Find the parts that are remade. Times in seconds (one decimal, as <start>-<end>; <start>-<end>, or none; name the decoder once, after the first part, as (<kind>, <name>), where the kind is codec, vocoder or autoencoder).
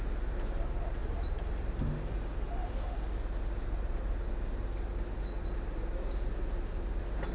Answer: none